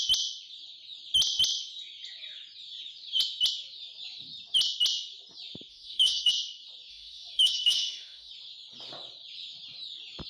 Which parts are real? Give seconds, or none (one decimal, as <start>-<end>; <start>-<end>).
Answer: 0.0-5.7; 6.3-6.9; 8.3-10.3